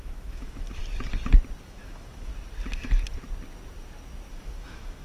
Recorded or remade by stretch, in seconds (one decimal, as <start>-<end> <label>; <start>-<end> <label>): 0.0-0.8 remade; 0.8-1.6 recorded; 1.6-2.3 remade; 2.3-4.3 recorded; 4.3-5.0 remade